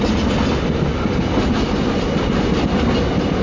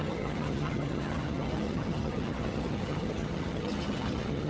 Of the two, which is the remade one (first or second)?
second